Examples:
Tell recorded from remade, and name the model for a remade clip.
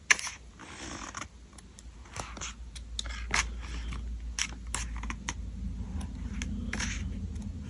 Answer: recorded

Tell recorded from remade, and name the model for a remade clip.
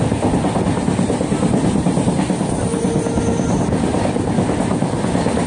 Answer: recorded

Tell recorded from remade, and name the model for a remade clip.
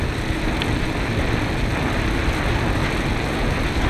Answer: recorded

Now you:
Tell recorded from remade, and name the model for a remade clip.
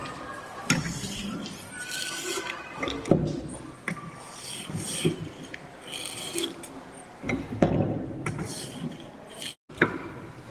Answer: recorded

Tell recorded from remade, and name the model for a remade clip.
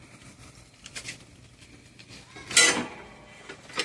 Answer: recorded